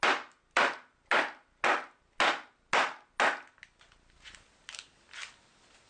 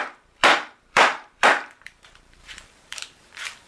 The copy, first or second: second